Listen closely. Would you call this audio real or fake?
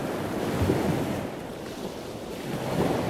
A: real